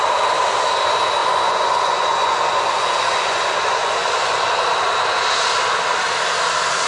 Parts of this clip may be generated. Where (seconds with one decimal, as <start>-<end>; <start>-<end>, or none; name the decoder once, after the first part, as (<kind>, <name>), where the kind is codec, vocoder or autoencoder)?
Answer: 1.2-4.5 (vocoder, Vocos)